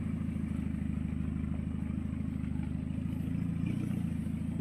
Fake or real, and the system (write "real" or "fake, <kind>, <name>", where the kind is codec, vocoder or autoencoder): real